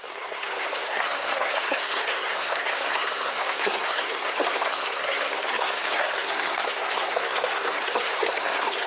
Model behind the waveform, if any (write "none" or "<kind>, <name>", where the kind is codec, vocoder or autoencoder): codec, SNAC